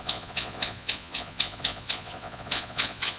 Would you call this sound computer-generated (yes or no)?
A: yes